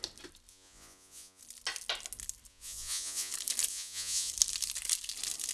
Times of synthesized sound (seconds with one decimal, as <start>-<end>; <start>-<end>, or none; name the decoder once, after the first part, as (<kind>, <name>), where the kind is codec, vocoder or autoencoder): 0.5-1.4 (vocoder, Vocos); 2.5-3.3; 3.7-4.3